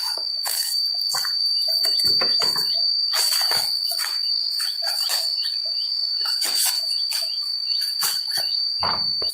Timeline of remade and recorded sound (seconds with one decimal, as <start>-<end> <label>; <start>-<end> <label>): 0.0-0.7 remade; 0.7-1.8 recorded; 1.8-9.3 remade